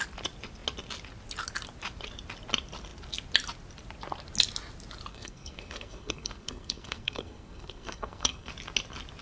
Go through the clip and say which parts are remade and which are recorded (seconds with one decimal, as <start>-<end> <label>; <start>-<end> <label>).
0.0-5.1 recorded; 5.1-8.5 remade; 8.5-9.2 recorded